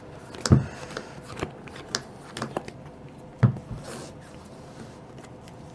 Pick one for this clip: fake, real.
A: real